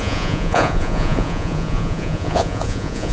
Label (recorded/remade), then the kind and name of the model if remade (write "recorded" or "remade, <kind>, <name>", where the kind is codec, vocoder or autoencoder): remade, vocoder, Vocos